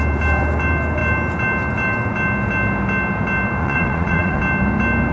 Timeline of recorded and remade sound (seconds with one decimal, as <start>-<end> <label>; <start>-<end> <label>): 0.0-3.6 recorded; 3.6-4.4 remade; 4.4-5.1 recorded